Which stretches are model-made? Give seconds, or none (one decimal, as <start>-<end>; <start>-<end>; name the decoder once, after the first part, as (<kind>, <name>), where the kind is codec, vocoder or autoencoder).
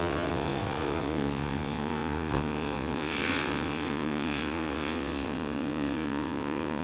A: 0.0-6.8 (vocoder, WaveNeXt)